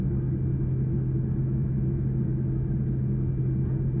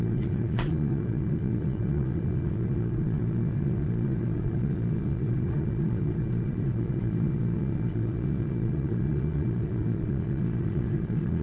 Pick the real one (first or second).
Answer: first